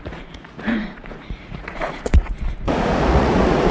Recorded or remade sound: remade